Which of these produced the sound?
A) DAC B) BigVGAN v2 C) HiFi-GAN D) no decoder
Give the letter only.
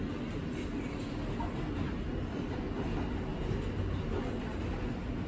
D